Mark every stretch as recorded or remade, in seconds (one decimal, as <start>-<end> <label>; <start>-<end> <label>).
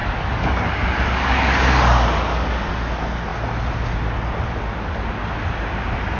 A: 0.0-2.7 remade; 2.7-6.2 recorded